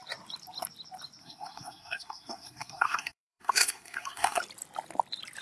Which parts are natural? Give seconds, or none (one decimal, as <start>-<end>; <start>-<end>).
0.0-1.2; 4.4-5.4